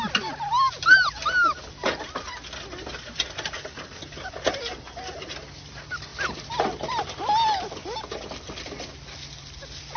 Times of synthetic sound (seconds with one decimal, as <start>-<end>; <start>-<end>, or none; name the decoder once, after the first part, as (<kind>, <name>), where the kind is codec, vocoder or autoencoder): none